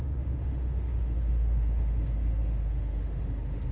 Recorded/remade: remade